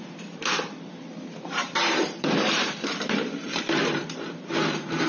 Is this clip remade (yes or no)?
yes